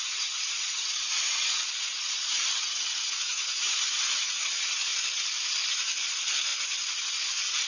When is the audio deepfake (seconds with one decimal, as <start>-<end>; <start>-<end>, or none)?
0.0-4.9; 6.0-6.5